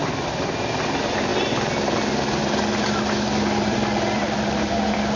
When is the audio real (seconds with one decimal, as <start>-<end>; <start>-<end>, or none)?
0.0-5.2